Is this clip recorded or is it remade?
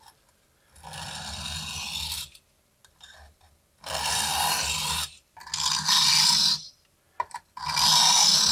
recorded